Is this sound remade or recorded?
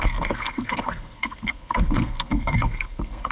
remade